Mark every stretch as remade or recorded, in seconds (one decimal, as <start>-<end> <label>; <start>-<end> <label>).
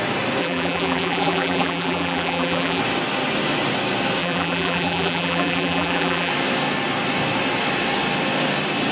0.0-0.4 recorded; 0.4-2.8 remade; 2.8-4.2 recorded; 4.2-6.3 remade; 6.3-8.9 recorded